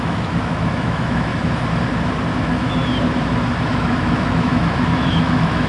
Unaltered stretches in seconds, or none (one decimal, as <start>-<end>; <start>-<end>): 1.3-2.4; 2.8-3.7